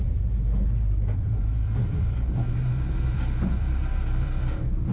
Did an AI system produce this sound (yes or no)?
yes